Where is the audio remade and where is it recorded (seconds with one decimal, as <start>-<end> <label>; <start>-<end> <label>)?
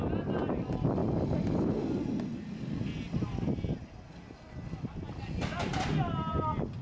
0.0-6.8 recorded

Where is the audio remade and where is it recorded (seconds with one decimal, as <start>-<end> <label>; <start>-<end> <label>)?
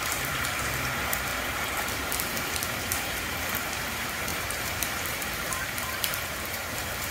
0.0-7.1 remade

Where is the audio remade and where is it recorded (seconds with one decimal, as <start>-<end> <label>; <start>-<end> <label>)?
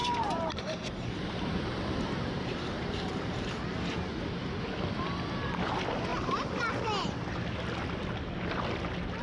0.0-3.6 remade; 3.6-9.2 recorded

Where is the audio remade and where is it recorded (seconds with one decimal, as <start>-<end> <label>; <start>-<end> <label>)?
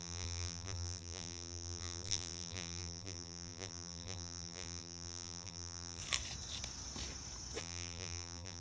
0.0-6.0 remade; 6.0-7.6 recorded; 7.6-8.6 remade